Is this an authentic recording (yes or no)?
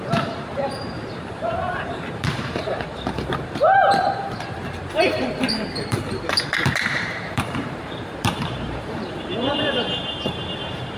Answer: no